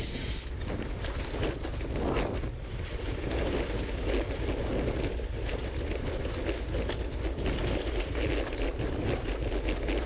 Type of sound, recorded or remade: recorded